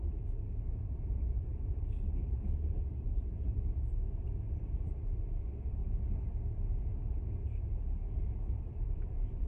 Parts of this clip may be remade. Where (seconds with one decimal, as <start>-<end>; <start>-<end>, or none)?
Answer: 0.0-2.2; 3.5-5.8; 8.6-9.5